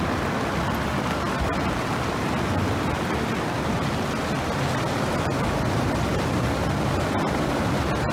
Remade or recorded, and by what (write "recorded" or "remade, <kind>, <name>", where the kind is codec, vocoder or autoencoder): recorded